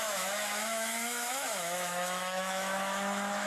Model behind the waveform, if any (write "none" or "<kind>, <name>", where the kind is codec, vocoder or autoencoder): autoencoder, DAC-VAE